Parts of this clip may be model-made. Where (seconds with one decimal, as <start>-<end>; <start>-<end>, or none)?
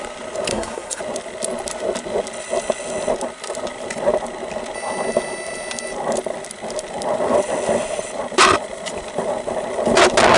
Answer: 0.5-1.0